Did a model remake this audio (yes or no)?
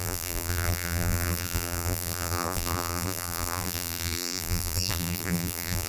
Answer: yes